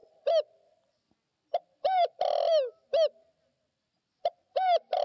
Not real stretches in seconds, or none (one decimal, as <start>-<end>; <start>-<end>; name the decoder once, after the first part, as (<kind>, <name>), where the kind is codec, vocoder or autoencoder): none